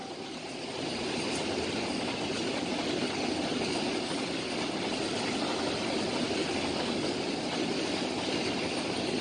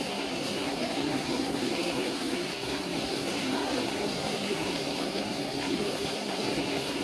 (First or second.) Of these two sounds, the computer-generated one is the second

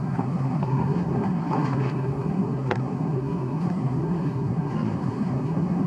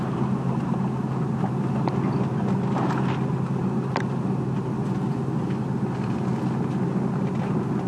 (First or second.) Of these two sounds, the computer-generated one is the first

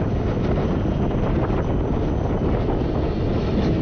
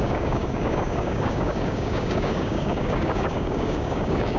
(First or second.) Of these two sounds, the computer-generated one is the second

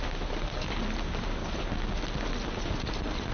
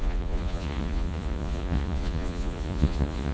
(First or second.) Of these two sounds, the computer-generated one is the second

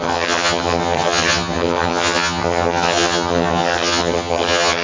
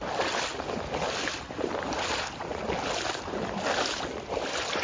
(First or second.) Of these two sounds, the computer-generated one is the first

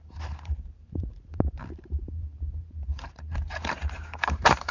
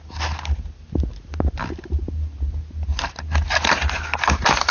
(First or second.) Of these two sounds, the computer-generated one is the first